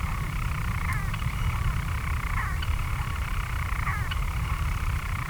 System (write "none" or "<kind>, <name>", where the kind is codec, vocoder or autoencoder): vocoder, BigVGAN v2